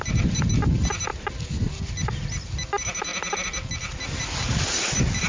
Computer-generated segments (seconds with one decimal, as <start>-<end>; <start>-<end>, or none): none

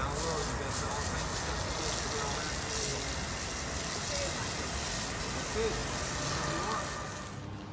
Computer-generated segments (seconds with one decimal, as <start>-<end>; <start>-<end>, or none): none

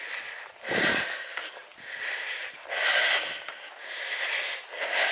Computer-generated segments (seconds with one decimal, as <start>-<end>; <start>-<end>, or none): 0.9-1.5; 2.9-3.7

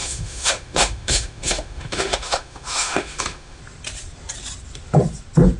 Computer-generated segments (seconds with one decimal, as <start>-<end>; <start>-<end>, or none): 0.0-3.6